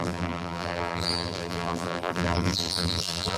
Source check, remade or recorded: remade